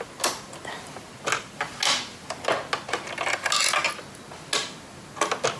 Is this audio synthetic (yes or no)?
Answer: no